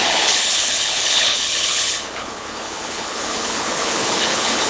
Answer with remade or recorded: remade